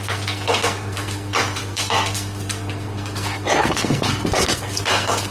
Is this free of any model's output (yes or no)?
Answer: no